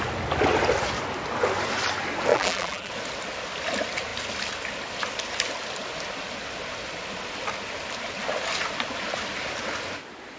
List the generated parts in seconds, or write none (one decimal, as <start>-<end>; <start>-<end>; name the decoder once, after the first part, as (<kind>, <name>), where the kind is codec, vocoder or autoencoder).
2.3-2.9 (vocoder, BigVGAN v2)